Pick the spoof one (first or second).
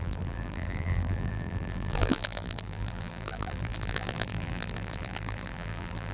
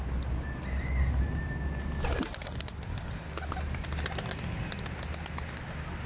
first